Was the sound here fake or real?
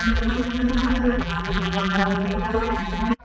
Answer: fake